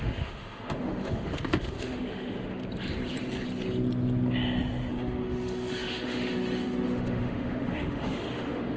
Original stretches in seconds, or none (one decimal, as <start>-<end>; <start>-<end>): 2.6-4.9

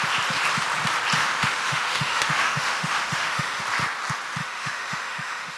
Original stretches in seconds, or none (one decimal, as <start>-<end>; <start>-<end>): 0.0-1.2; 3.6-4.4

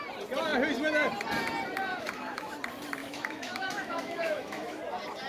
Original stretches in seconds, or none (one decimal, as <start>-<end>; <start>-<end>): 0.0-1.9; 2.5-3.0; 4.8-5.3

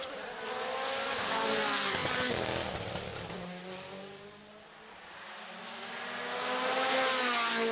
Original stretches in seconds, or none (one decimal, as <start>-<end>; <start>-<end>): 0.0-7.7

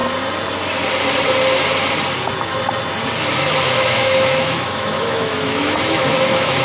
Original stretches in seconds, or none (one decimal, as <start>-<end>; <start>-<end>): 0.0-3.8